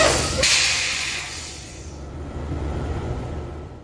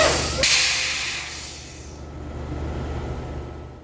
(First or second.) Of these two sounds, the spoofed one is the first